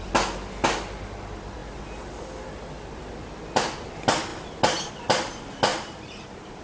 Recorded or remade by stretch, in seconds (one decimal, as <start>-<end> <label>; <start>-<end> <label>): 0.0-5.7 recorded; 5.7-6.6 remade